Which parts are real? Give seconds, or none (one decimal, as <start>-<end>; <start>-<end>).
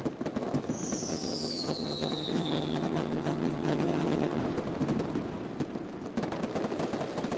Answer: 0.0-1.1; 4.4-7.4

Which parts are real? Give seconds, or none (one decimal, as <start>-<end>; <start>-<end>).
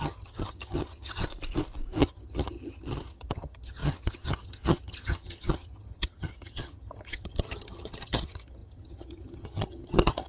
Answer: 1.2-2.0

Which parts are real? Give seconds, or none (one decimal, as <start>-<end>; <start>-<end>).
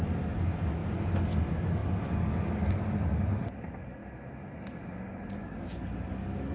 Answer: 0.0-6.5